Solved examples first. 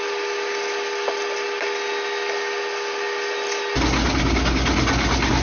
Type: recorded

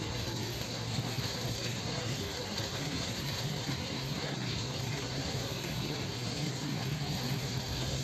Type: remade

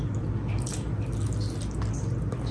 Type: recorded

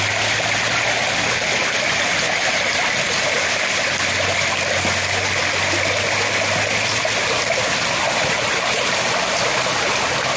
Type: recorded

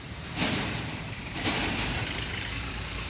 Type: remade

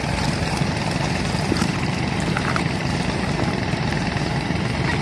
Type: remade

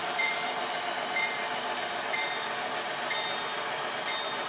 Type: remade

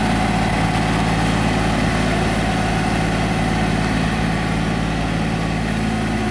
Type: recorded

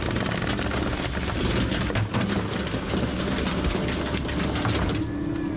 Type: recorded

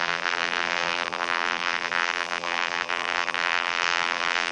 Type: remade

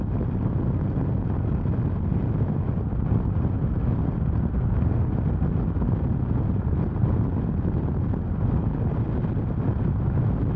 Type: recorded